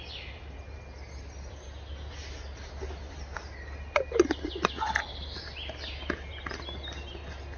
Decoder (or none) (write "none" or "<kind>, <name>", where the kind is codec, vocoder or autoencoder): none